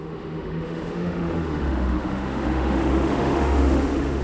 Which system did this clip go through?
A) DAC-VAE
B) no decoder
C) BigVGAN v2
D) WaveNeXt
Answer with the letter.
A